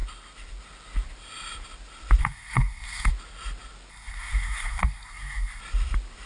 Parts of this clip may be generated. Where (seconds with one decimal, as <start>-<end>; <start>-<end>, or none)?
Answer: 2.2-3.1; 3.9-5.6